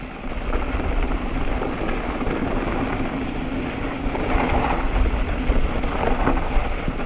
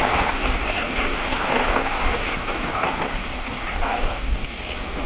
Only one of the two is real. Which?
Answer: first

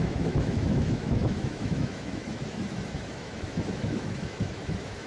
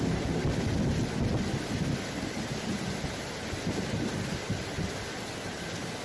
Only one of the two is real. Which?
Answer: second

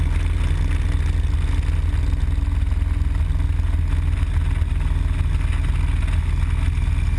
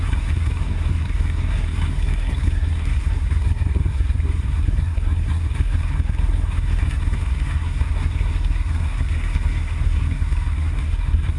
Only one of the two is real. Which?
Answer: first